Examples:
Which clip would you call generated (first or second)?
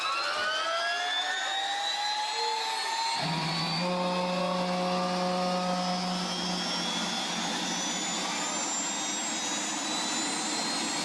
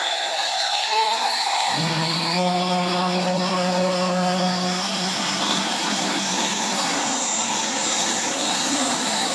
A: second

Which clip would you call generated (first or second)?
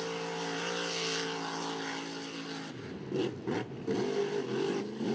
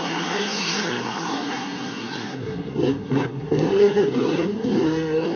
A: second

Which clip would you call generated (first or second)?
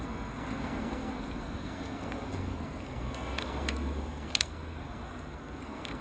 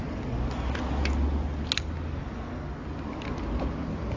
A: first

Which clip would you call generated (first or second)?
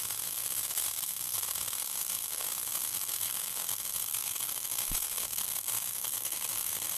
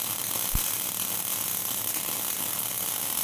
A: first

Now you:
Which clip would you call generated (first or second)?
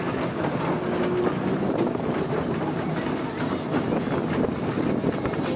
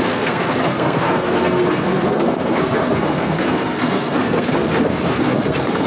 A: second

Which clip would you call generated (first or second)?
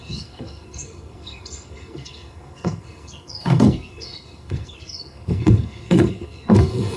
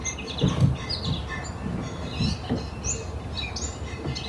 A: first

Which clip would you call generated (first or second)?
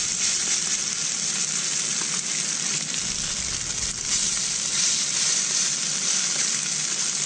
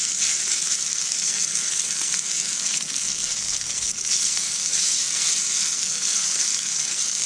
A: second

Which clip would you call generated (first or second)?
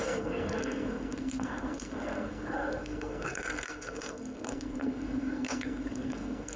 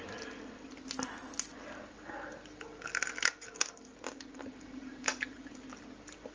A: first